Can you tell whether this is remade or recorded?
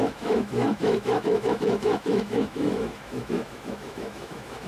remade